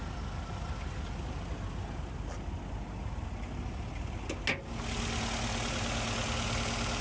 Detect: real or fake real